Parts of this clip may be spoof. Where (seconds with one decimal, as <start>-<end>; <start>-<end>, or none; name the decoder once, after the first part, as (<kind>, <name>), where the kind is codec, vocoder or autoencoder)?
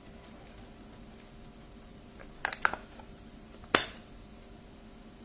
none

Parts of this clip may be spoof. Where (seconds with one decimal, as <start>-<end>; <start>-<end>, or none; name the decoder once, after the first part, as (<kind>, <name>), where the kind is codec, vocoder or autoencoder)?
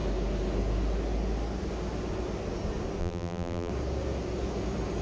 3.0-3.7 (vocoder, BigVGAN v2)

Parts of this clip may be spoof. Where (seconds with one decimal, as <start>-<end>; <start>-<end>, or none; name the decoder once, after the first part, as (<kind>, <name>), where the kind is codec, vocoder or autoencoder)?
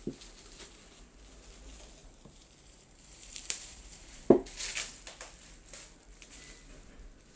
2.0-4.2 (vocoder, BigVGAN v2)